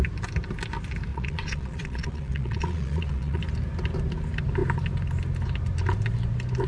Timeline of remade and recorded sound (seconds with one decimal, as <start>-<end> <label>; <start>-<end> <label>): 0.0-1.1 recorded; 1.1-3.4 remade; 3.4-6.7 recorded

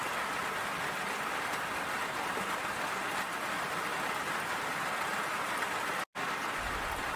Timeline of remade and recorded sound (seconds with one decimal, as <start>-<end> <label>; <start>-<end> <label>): 0.0-7.2 recorded

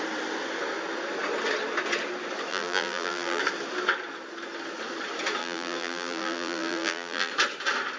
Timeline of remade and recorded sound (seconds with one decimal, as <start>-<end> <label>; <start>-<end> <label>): 0.0-2.5 recorded; 2.5-3.4 remade; 3.4-5.4 recorded; 5.4-7.3 remade; 7.3-8.0 recorded

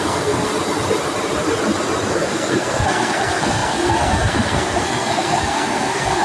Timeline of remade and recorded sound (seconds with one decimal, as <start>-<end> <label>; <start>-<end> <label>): 0.0-0.5 remade; 0.5-2.1 recorded; 2.1-6.2 remade

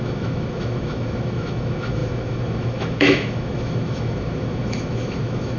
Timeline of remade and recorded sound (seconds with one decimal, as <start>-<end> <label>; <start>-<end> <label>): 0.0-5.6 remade

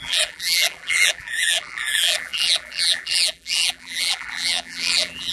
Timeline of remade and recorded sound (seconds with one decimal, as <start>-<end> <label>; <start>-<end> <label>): 0.0-5.3 remade

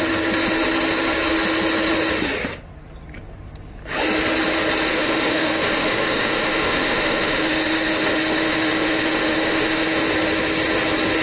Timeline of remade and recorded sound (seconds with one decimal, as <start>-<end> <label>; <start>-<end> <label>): 0.0-4.9 recorded; 4.9-10.0 remade; 10.0-11.2 recorded

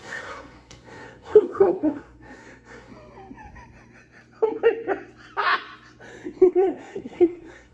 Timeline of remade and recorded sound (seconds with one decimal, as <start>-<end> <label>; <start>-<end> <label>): 0.0-2.9 remade; 2.9-6.5 recorded; 6.5-7.7 remade